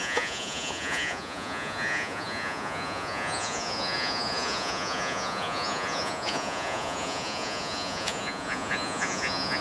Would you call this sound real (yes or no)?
no